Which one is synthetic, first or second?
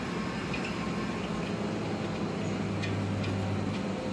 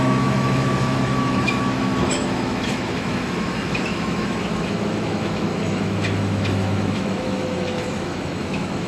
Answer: second